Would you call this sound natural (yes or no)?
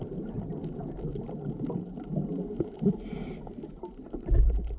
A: yes